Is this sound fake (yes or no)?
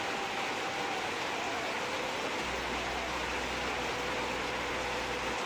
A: no